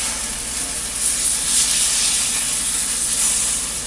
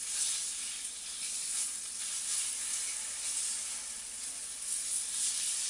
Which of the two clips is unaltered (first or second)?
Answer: first